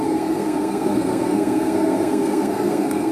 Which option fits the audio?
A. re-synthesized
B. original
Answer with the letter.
A